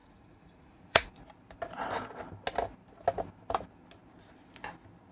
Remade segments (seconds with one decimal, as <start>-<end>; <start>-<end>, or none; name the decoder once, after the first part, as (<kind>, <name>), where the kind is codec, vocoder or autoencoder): 0.0-1.2 (vocoder, Vocos)